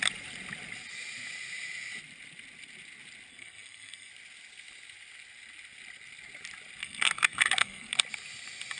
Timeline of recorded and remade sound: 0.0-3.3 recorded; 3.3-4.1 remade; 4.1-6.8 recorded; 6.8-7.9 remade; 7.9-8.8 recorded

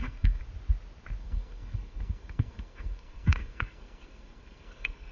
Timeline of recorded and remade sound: 0.0-0.4 remade; 0.4-1.2 recorded; 1.2-5.1 remade

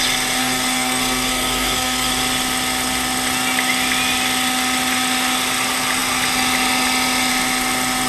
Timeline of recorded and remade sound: 0.0-0.4 recorded; 0.4-2.1 remade; 2.1-8.1 recorded

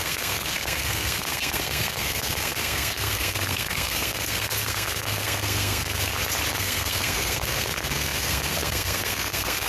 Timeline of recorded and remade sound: 0.0-6.1 remade; 6.1-6.6 recorded; 6.6-9.7 remade

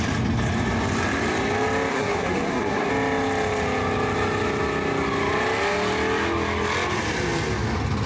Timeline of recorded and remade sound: 0.0-1.9 recorded; 1.9-2.9 remade; 2.9-8.1 recorded

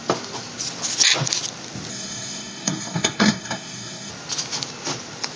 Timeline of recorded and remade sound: 0.0-1.9 recorded; 1.9-4.1 remade; 4.1-5.4 recorded

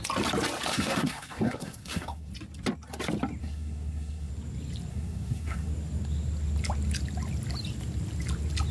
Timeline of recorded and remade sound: 0.0-0.7 recorded; 0.7-2.3 remade; 2.3-3.4 recorded; 3.4-4.3 remade; 4.3-4.9 recorded; 4.9-5.7 remade; 5.7-8.7 recorded

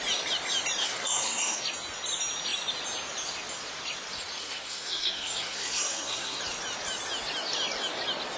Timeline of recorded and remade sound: 0.0-0.8 recorded; 0.8-1.6 remade; 1.6-4.4 recorded; 4.4-6.4 remade; 6.4-8.4 recorded